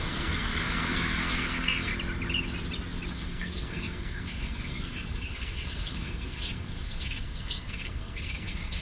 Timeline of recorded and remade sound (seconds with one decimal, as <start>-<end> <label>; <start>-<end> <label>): 0.0-1.9 remade; 1.9-3.1 recorded; 3.1-8.8 remade